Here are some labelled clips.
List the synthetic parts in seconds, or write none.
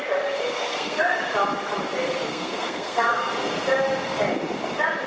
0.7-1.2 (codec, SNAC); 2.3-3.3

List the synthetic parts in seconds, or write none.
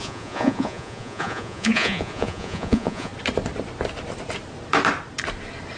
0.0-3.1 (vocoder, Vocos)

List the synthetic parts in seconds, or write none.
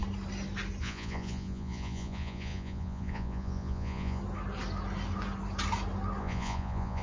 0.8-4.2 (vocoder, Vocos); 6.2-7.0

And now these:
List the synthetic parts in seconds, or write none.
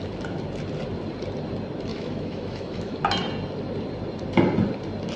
1.9-3.0 (autoencoder, DAC-VAE)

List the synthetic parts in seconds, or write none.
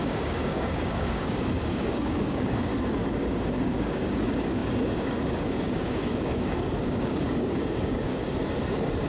0.0-2.7 (codec, DAC); 3.5-8.1